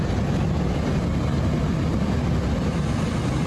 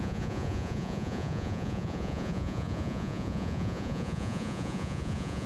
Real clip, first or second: first